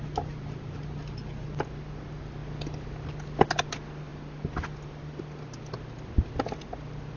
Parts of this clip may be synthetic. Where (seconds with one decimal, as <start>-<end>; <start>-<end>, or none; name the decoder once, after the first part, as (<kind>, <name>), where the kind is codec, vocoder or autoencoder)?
none